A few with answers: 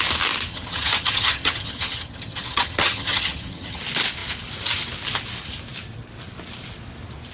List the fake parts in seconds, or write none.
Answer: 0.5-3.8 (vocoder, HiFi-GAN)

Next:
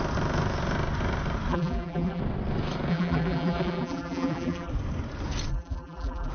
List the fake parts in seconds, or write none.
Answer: 1.5-2.2 (vocoder, BigVGAN v2); 2.9-4.7; 5.5-6.3